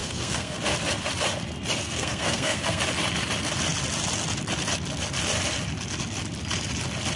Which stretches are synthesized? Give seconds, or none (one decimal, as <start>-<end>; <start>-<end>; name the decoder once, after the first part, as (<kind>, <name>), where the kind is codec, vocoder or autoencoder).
0.0-0.6 (codec, SNAC); 1.8-2.8